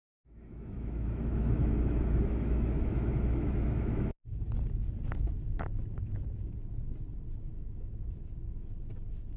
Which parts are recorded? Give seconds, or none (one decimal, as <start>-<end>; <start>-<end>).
4.4-7.5; 8.3-9.4